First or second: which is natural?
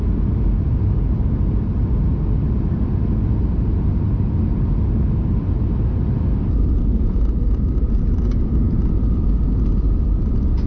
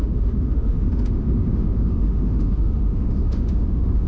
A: first